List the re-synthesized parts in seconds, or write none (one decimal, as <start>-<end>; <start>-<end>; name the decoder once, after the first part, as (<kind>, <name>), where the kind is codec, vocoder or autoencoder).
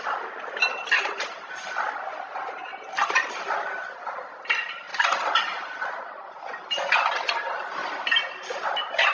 none